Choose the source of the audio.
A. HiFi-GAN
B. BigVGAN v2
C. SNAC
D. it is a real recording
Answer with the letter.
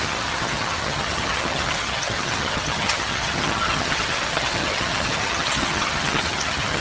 A